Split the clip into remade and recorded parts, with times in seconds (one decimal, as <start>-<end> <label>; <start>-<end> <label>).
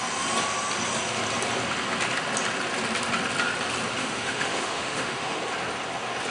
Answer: 0.0-4.0 recorded; 4.0-5.4 remade; 5.4-6.3 recorded